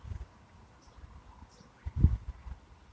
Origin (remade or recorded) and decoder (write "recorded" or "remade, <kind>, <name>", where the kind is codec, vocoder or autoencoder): recorded